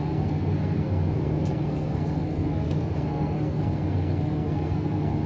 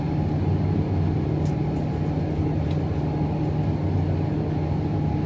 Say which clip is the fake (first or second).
first